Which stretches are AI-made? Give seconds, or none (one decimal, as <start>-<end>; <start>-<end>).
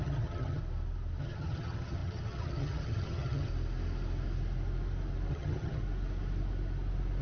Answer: 0.0-0.6; 1.2-3.5; 5.3-5.8